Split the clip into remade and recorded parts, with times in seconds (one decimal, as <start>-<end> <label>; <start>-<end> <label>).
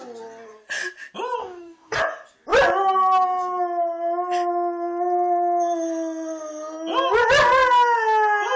0.0-1.4 recorded; 1.4-2.0 remade; 2.0-8.6 recorded